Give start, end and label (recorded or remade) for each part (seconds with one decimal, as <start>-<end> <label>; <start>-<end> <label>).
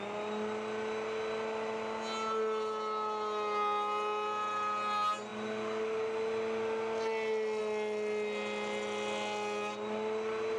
0.0-10.6 recorded